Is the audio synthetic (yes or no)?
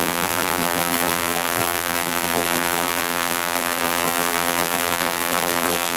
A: yes